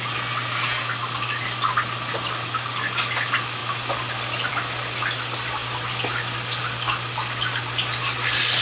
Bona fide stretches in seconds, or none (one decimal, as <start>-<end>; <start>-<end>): 0.0-8.6